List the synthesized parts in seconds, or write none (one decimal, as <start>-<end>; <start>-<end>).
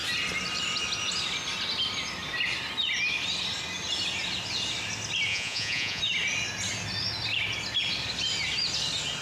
5.3-6.0